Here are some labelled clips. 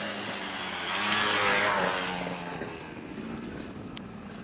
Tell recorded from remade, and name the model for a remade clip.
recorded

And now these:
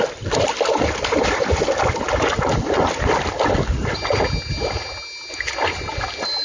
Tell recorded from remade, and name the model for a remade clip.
recorded